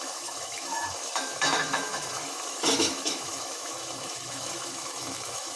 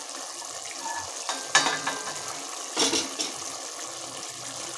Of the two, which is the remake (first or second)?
first